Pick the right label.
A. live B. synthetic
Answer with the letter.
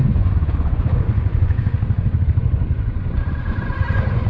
B